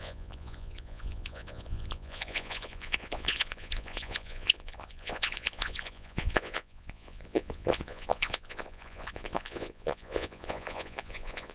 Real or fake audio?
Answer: fake